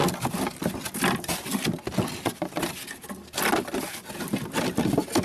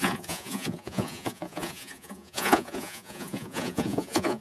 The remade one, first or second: second